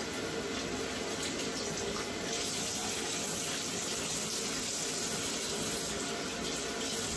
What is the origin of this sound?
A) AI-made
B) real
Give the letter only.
B